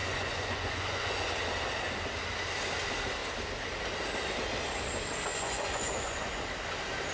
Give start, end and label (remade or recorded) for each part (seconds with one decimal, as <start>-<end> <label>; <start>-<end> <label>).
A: 0.0-1.3 remade; 1.3-5.3 recorded; 5.3-6.4 remade; 6.4-7.1 recorded